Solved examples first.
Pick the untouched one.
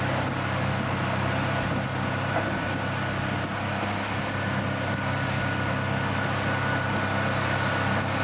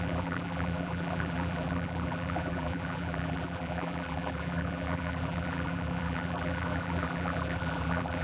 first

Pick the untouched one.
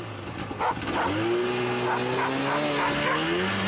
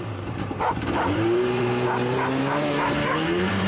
first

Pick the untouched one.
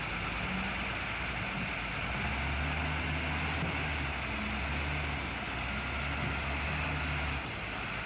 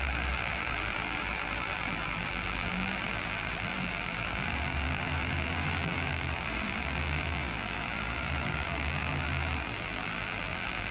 first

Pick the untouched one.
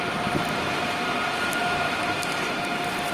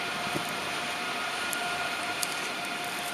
first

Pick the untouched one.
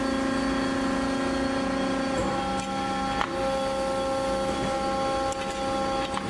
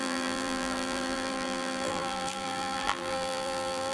first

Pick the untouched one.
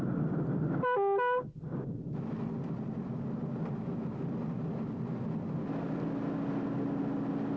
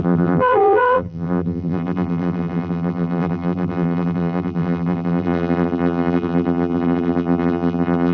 first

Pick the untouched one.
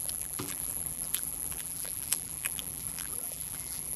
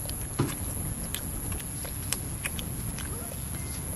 second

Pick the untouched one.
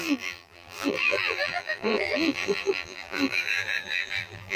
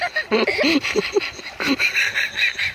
second